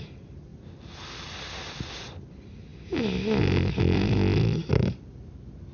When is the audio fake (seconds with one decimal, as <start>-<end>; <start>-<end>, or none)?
none